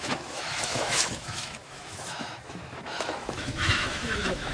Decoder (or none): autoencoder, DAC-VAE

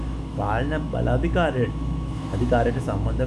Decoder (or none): autoencoder, DAC-VAE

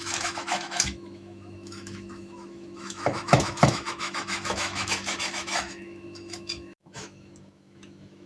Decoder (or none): autoencoder, DAC-VAE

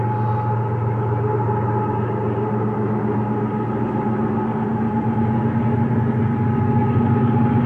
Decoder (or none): none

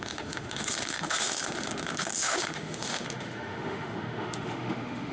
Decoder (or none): autoencoder, DAC-VAE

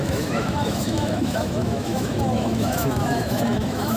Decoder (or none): autoencoder, DAC-VAE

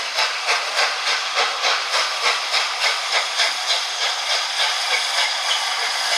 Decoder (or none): none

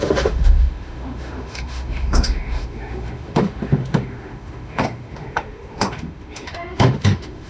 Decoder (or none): autoencoder, DAC-VAE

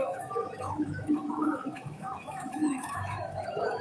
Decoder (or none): autoencoder, DAC-VAE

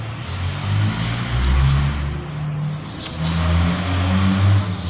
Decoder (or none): none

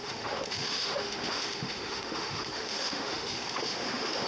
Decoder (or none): autoencoder, DAC-VAE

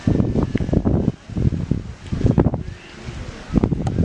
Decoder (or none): none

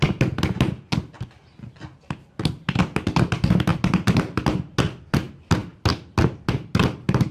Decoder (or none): none